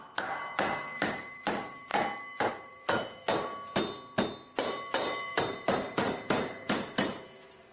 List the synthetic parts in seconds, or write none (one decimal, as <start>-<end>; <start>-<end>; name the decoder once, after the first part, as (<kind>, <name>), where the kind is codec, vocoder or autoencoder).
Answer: 0.0-1.9 (vocoder, BigVGAN v2); 2.5-3.5; 4.6-7.7